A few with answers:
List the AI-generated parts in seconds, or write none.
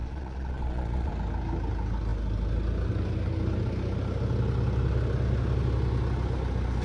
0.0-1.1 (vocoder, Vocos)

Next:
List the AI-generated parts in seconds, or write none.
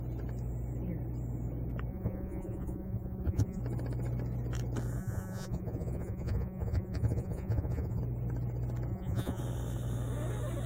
1.9-3.6 (vocoder, Vocos); 5.0-8.0; 8.9-9.4